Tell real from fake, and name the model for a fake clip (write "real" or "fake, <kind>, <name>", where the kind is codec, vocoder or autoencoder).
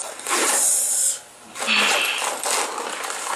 real